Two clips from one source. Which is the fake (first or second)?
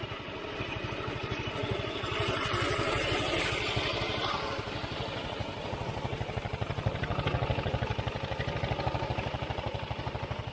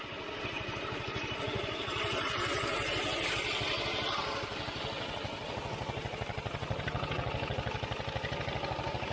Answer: first